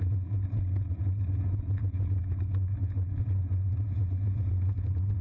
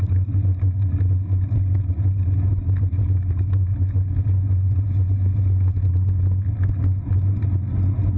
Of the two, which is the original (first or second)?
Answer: second